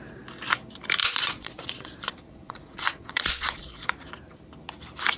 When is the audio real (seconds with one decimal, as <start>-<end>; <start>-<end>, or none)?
0.0-1.0; 4.1-5.2